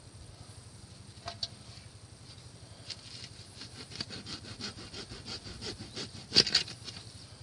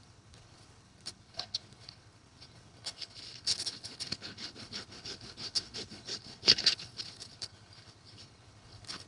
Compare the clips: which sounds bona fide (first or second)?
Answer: first